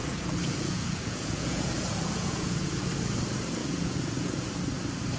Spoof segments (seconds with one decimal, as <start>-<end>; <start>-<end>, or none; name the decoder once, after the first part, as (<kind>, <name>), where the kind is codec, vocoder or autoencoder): 0.0-2.9 (vocoder, Vocos); 3.6-4.5